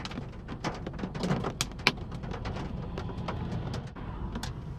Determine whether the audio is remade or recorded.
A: recorded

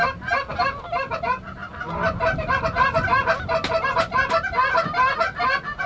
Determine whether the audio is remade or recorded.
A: recorded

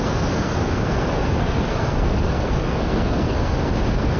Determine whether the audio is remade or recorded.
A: remade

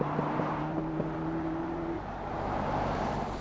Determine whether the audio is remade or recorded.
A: remade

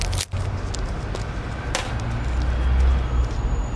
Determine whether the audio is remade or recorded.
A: recorded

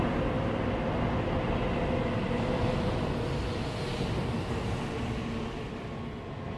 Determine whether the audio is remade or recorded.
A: recorded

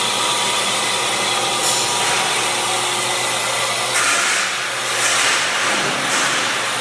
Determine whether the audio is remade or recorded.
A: recorded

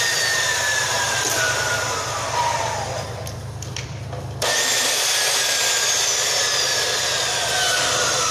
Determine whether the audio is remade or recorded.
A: remade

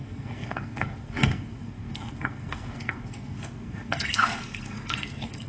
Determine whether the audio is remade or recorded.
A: remade